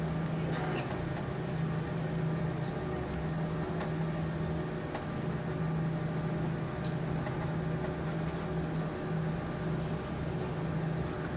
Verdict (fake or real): real